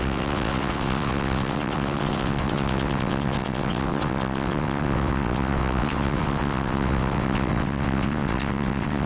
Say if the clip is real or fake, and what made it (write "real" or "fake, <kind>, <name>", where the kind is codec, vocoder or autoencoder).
fake, vocoder, WaveNeXt